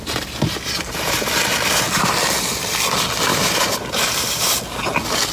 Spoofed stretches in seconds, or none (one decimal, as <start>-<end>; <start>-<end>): 3.3-4.4